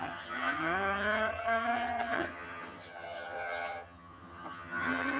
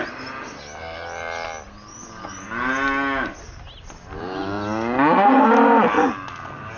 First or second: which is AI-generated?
first